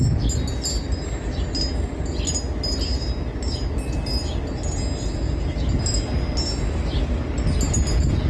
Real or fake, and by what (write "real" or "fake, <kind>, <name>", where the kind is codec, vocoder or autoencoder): real